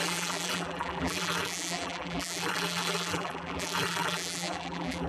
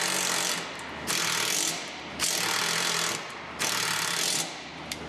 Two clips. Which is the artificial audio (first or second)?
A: first